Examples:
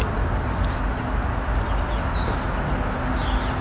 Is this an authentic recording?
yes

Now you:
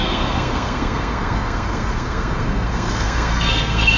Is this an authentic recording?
no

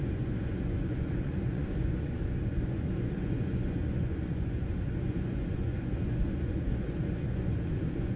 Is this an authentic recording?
no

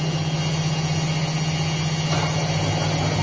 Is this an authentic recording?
yes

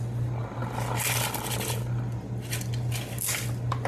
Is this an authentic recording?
yes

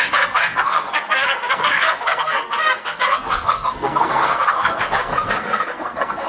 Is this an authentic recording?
no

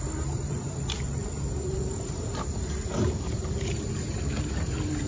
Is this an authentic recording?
no